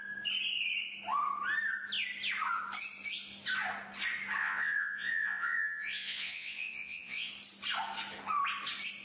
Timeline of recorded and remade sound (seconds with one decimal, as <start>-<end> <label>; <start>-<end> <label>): 0.0-4.4 recorded; 4.4-7.3 remade; 7.3-9.0 recorded